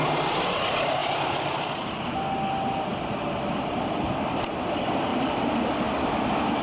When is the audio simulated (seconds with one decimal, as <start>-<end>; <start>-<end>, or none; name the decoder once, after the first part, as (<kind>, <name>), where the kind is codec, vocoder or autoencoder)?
5.1-5.7 (vocoder, BigVGAN v2)